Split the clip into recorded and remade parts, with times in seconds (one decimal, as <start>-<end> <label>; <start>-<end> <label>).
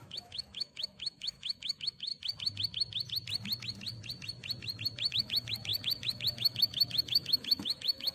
0.0-2.1 remade; 2.1-5.1 recorded; 5.1-8.1 remade